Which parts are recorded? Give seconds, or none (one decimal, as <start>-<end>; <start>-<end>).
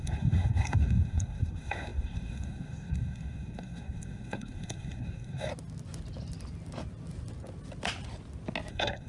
5.5-8.7